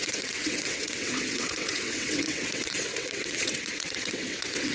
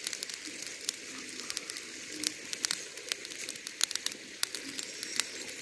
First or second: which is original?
second